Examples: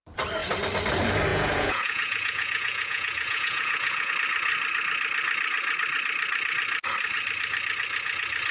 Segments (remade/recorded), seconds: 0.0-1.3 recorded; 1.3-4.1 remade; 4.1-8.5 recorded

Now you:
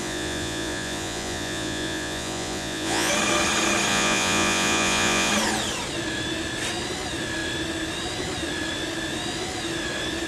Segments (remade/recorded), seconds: 0.0-3.1 remade; 3.1-3.9 recorded; 3.9-5.3 remade; 5.3-10.3 recorded

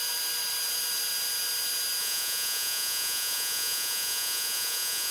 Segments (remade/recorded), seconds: 0.0-2.0 recorded; 2.0-5.1 remade

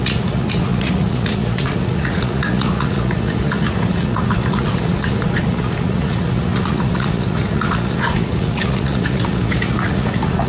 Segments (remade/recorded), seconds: 0.0-10.5 remade